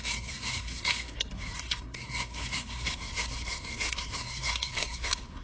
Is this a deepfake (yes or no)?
yes